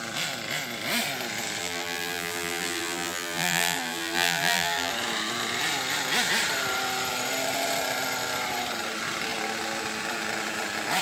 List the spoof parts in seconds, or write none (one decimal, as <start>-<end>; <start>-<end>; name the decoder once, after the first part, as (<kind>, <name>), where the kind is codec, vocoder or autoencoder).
1.6-4.9 (vocoder, BigVGAN v2)